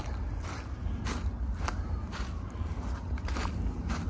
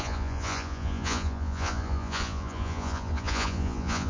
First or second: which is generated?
second